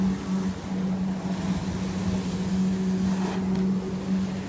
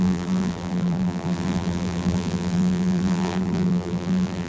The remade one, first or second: second